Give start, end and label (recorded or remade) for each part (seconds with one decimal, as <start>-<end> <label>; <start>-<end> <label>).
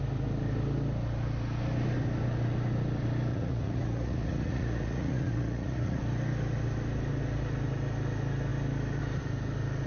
0.0-3.3 recorded; 3.3-6.0 remade; 6.0-9.9 recorded